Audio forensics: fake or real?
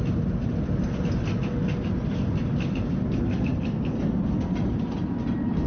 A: real